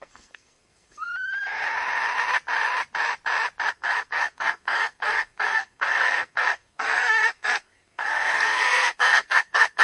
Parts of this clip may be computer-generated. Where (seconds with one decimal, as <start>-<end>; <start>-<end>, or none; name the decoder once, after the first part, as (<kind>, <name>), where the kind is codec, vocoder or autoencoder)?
0.0-1.1 (codec, SNAC); 3.7-9.8